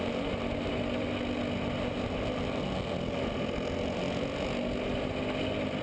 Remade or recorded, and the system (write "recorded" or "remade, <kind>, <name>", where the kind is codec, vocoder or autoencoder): recorded